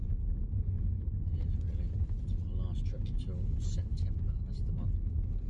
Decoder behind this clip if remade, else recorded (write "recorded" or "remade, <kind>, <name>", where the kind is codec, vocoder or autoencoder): recorded